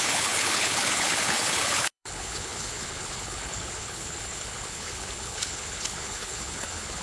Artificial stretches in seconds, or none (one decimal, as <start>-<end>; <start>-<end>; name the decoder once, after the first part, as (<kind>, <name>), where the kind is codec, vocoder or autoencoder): 0.0-7.0 (codec, HILCodec)